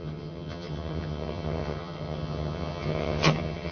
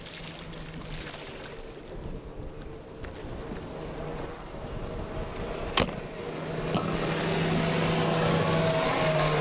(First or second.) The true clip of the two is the second